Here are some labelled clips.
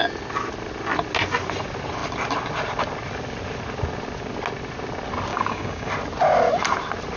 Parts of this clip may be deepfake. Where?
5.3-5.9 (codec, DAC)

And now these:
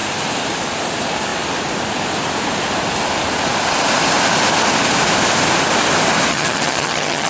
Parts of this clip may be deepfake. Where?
6.3-7.3 (vocoder, HiFi-GAN)

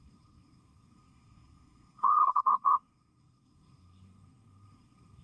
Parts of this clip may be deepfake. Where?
0.0-5.2 (codec, SNAC)

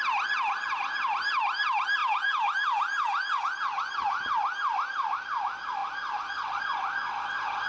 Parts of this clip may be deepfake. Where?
2.0-3.4 (vocoder, Vocos)

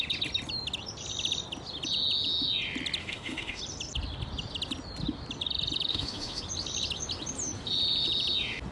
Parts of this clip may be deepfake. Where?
3.0-3.6 (autoencoder, DAC-VAE); 5.9-6.4

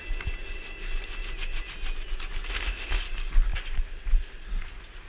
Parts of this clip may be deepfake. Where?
2.5-3.0 (codec, ZipCodec)

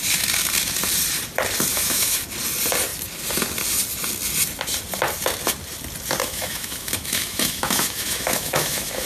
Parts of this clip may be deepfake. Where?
1.7-2.2 (autoencoder, DAC-VAE); 6.2-9.1